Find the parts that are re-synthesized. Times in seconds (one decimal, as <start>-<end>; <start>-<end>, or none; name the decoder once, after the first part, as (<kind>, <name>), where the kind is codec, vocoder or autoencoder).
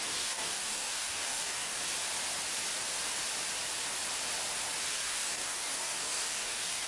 0.0-1.8 (codec, DAC); 4.9-6.9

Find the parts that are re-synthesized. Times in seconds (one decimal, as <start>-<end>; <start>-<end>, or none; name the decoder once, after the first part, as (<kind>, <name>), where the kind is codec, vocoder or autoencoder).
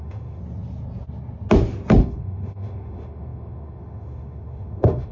0.0-0.4 (autoencoder, DAC-VAE); 2.0-5.1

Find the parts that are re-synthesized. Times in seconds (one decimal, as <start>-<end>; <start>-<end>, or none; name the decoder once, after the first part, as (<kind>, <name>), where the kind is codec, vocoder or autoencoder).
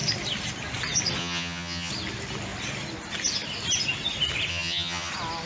1.2-1.9 (vocoder, HiFi-GAN); 4.5-5.1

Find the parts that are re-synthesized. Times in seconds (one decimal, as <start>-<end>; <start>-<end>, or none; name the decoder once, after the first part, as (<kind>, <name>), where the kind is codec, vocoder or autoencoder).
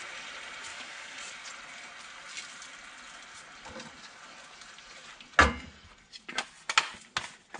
0.7-1.2 (codec, DAC)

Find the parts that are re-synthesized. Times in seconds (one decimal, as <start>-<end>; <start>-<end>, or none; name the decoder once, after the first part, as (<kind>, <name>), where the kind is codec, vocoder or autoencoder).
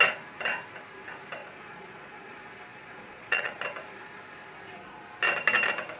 1.4-2.3 (vocoder, Vocos); 2.7-3.6